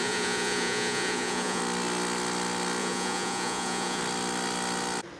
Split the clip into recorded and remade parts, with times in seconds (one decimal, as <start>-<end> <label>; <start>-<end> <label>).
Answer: 0.0-1.6 remade; 1.6-2.8 recorded; 2.8-4.0 remade; 4.0-5.2 recorded